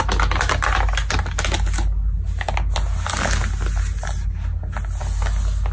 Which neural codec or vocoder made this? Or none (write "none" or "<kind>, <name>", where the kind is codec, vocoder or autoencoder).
none